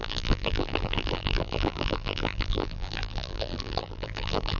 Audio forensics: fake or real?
fake